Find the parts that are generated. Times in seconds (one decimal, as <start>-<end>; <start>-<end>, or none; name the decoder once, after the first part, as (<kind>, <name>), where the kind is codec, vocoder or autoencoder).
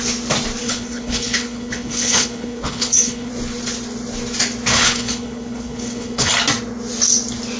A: 0.6-3.3 (codec, HILCodec); 4.7-6.3